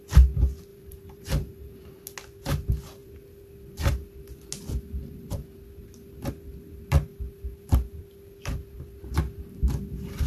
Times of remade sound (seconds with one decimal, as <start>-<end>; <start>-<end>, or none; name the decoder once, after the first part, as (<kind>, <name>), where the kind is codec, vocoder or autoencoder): 0.7-2.0 (vocoder, BigVGAN v2); 5.0-5.6